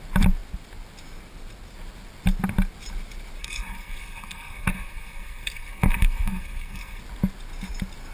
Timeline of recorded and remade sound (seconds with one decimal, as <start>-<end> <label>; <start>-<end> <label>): 0.0-3.4 recorded; 3.4-7.0 remade; 7.0-8.1 recorded